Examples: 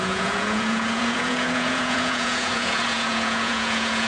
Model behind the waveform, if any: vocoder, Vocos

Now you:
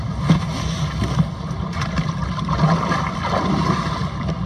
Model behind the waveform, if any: none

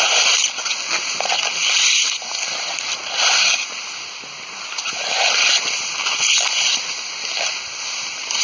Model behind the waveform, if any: none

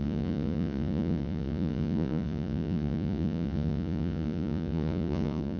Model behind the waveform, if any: vocoder, Vocos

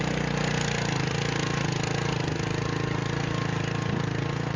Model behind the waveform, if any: none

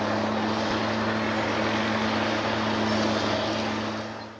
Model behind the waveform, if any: none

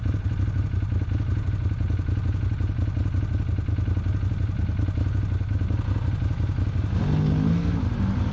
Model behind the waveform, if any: none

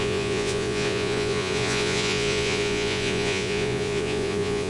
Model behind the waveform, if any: vocoder, Vocos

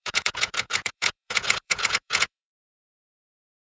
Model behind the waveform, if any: vocoder, Vocos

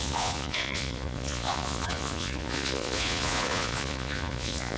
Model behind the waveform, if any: vocoder, Vocos